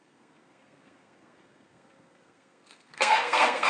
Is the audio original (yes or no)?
no